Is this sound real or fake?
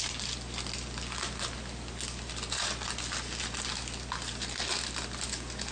real